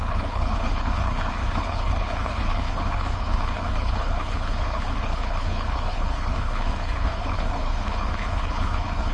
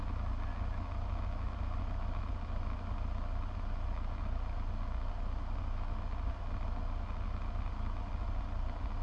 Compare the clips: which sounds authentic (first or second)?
second